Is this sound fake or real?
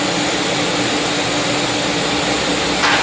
real